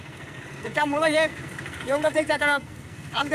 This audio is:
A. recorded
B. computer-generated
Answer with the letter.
B